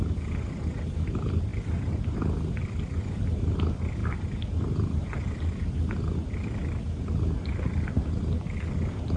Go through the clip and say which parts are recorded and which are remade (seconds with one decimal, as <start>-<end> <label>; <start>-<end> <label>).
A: 0.0-9.2 recorded